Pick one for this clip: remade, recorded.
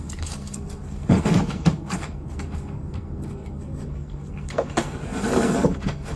remade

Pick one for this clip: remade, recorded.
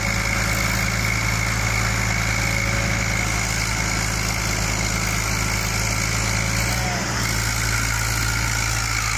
recorded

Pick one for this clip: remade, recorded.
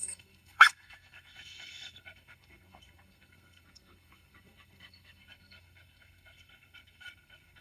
remade